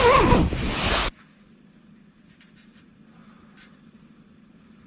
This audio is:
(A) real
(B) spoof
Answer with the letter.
A